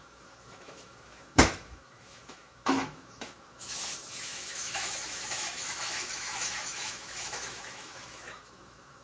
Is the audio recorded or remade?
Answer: remade